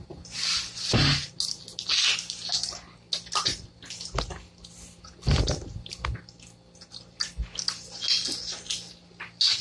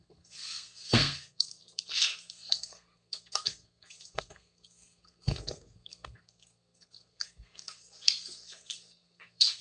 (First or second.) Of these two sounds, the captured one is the first